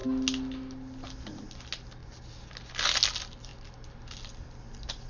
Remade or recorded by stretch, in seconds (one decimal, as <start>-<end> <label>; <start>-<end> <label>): 0.0-5.1 recorded